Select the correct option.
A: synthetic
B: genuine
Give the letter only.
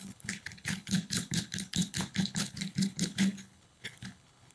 A